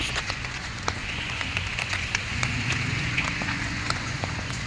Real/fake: fake